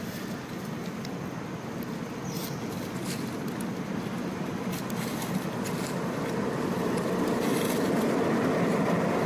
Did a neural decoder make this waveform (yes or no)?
no